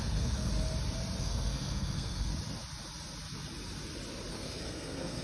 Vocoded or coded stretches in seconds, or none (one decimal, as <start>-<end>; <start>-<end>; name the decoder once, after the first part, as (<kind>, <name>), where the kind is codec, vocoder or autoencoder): 0.0-0.5 (codec, SNAC); 1.2-2.3; 4.3-5.2